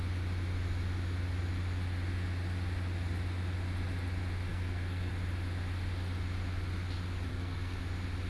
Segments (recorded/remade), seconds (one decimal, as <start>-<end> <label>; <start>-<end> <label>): 0.0-4.5 recorded; 4.5-5.1 remade; 5.1-7.3 recorded; 7.3-7.8 remade; 7.8-8.3 recorded